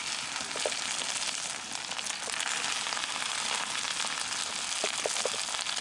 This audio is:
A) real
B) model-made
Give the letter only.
A